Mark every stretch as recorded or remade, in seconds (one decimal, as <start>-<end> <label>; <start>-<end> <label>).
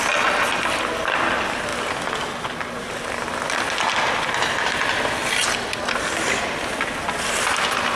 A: 0.0-8.0 recorded